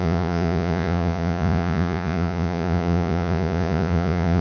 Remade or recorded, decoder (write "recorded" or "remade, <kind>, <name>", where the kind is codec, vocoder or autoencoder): remade, vocoder, Vocos